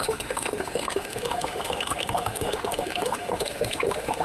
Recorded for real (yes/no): no